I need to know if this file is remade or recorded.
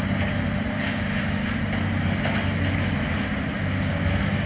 recorded